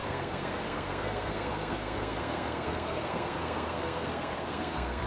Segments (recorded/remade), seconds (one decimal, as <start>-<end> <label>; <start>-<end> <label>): 0.0-5.1 remade